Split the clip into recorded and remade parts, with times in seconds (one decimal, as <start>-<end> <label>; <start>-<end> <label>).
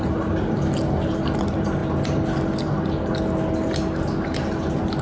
0.0-5.0 recorded